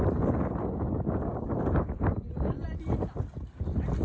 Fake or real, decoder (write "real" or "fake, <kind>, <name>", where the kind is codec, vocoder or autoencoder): real